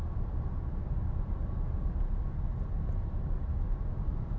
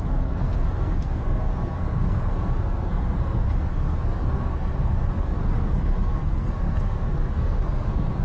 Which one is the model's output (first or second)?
second